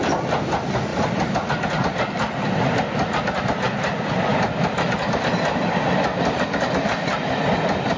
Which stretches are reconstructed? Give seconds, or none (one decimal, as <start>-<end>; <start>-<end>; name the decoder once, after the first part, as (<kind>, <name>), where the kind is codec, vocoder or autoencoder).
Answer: none